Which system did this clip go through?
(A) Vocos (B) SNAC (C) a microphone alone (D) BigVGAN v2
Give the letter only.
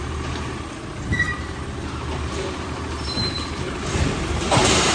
D